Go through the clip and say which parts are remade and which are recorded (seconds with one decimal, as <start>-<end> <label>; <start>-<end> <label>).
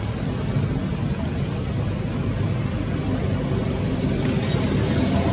0.0-5.3 recorded